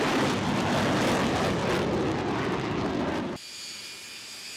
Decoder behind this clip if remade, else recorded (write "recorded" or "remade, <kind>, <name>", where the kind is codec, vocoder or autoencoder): recorded